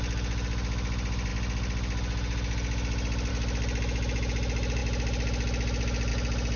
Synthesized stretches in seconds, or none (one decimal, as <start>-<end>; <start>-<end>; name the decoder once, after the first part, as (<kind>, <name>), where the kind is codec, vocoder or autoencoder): none